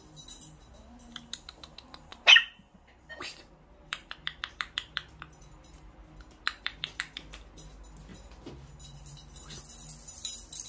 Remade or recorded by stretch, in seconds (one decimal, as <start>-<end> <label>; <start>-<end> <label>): 0.0-10.7 recorded